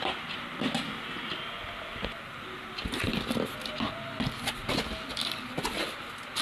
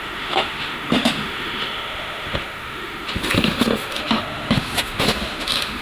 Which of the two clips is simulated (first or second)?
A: second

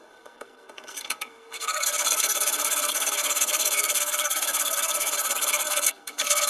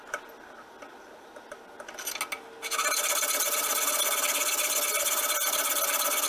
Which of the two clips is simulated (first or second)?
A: first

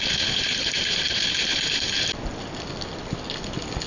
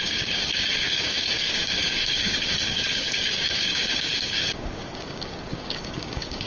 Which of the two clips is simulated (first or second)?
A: second